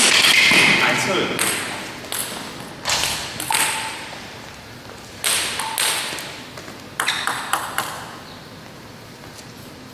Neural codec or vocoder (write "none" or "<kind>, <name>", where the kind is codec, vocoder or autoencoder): none